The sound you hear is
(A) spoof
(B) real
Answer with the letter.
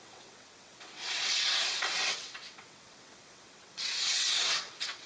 A